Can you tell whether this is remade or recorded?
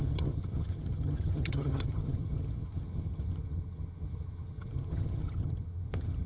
remade